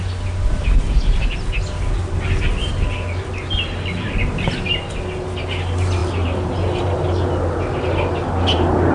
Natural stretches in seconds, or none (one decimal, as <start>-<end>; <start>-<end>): 0.0-8.9